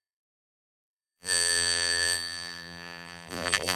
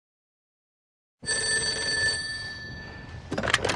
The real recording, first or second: second